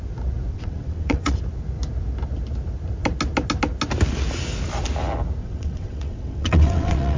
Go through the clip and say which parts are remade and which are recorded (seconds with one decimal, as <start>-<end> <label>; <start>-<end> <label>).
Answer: 0.0-0.5 recorded; 0.5-1.4 remade; 1.4-5.4 recorded; 5.4-7.2 remade